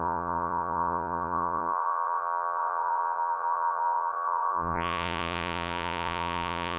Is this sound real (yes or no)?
no